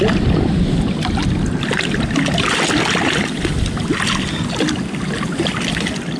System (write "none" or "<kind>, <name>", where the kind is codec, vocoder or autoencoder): none